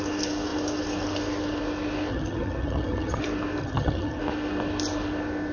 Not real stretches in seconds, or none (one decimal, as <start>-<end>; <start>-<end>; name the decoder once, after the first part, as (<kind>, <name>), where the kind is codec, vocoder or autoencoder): 2.1-3.2 (vocoder, HiFi-GAN); 3.6-4.2